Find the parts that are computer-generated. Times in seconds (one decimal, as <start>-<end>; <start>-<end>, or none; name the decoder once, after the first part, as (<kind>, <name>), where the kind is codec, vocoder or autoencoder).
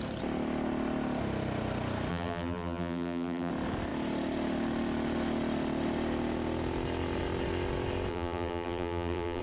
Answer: 2.1-3.5 (vocoder, BigVGAN v2); 8.1-9.4